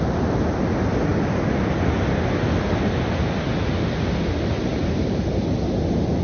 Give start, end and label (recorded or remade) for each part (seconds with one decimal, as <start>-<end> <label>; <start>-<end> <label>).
0.0-6.2 recorded